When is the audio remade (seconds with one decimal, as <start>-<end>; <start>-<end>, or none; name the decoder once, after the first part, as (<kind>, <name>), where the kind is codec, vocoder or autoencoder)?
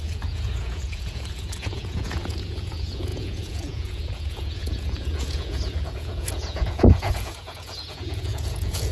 0.0-8.9 (vocoder, Vocos)